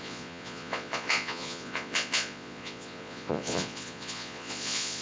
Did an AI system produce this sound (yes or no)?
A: yes